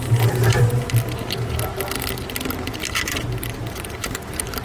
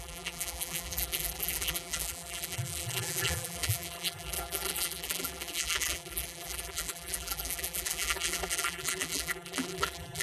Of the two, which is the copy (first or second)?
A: second